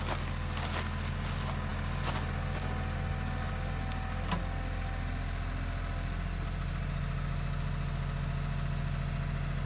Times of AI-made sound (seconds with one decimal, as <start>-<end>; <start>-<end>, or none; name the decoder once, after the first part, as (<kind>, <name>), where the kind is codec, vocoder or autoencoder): none